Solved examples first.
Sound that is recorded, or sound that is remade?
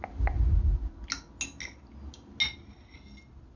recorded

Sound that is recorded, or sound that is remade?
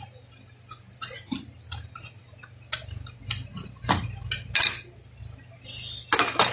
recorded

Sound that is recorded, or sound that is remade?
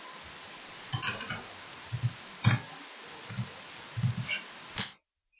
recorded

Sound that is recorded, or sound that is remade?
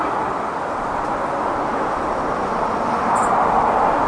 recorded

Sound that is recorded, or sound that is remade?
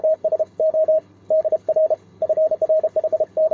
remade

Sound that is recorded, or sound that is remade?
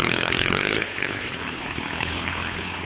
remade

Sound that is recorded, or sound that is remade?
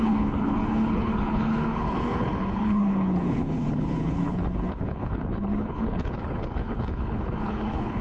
remade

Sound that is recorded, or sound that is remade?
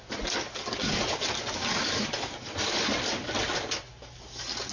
recorded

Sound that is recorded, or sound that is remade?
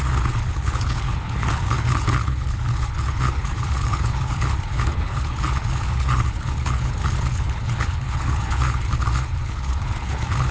remade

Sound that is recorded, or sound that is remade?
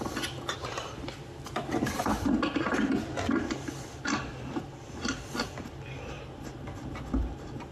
recorded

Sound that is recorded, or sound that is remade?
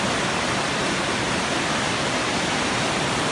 recorded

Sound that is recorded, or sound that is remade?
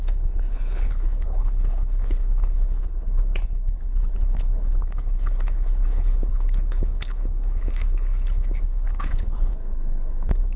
remade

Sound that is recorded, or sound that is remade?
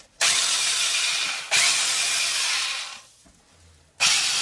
recorded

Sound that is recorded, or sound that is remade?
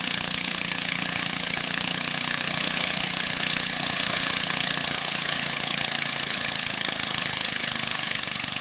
remade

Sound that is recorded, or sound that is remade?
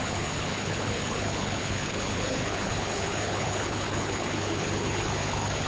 remade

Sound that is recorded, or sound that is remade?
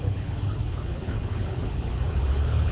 remade